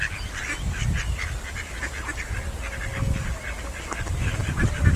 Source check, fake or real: real